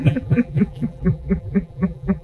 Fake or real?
fake